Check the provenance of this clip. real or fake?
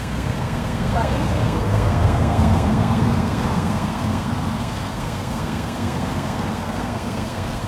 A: fake